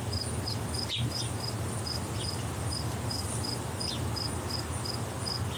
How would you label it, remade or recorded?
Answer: recorded